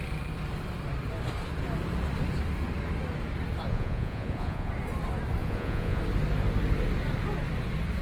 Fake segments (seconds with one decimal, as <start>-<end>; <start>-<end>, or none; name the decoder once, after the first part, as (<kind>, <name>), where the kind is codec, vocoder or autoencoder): 3.7-4.7 (vocoder, Vocos); 5.4-6.0